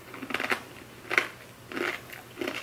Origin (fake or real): real